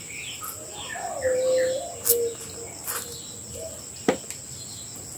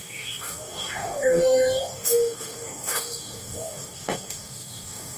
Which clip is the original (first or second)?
first